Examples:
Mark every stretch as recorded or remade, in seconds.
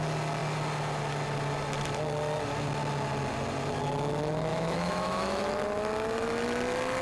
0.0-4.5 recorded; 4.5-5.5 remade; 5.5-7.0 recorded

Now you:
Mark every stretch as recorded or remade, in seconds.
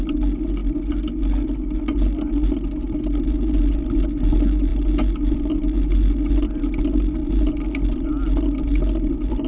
0.0-9.5 recorded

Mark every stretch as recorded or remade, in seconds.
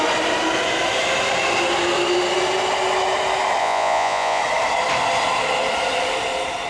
0.0-3.6 recorded; 3.6-4.4 remade; 4.4-6.7 recorded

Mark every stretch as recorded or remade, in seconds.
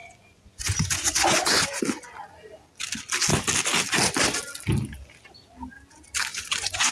0.0-1.8 remade; 1.8-6.3 recorded; 6.3-6.9 remade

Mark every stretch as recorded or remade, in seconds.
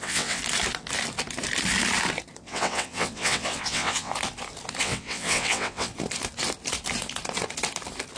0.0-0.4 remade; 0.4-2.4 recorded; 2.4-4.1 remade; 4.1-4.8 recorded; 4.8-5.9 remade; 5.9-8.2 recorded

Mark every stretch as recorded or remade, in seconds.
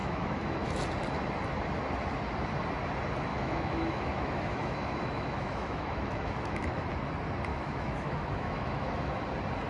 0.0-0.8 remade; 0.8-3.3 recorded; 3.3-6.9 remade; 6.9-7.5 recorded; 7.5-9.2 remade; 9.2-9.7 recorded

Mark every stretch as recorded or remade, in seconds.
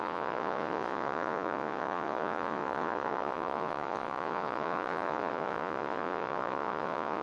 0.0-7.2 remade